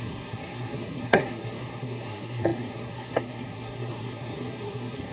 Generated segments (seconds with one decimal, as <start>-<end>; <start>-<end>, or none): 0.0-5.1